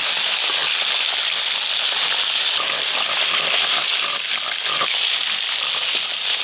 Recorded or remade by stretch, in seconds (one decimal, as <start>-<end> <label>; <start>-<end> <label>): 0.0-6.4 recorded